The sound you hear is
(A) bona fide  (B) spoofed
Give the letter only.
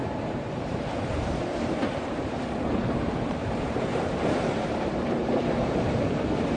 B